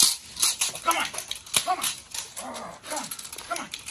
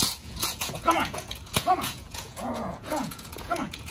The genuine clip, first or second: first